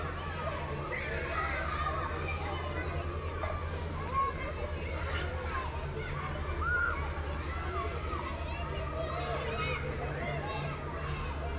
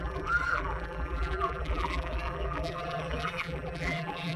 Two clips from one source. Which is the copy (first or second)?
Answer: second